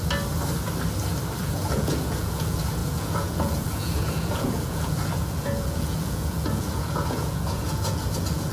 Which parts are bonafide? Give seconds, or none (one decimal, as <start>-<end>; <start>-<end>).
0.0-1.4